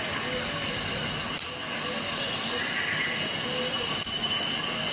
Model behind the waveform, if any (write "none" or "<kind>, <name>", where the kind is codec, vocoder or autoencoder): none